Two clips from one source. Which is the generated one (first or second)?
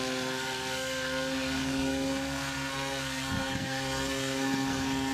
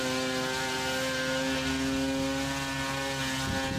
first